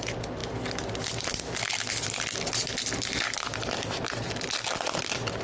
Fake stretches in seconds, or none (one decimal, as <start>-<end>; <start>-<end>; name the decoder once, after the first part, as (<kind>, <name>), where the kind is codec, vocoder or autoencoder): none